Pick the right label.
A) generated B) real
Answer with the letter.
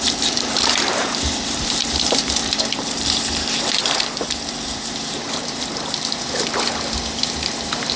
A